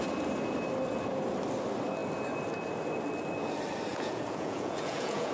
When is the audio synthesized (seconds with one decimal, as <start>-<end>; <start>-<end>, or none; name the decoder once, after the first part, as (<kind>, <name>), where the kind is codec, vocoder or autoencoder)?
3.9-5.3 (vocoder, Vocos)